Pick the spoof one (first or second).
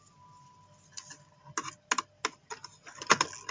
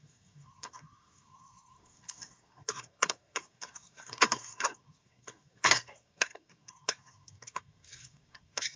second